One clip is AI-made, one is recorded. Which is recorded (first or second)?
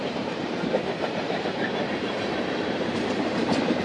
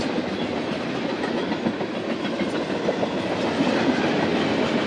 second